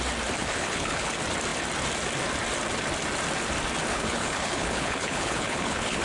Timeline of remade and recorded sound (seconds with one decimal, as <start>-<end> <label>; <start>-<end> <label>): 0.0-0.4 recorded; 0.4-1.1 remade; 1.1-3.9 recorded; 3.9-6.0 remade